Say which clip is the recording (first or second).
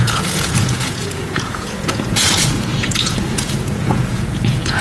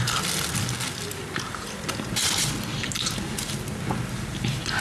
second